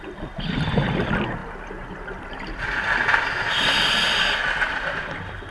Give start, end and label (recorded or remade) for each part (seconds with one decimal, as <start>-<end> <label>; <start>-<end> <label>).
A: 0.0-5.5 recorded